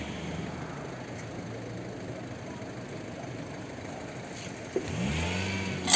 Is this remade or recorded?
recorded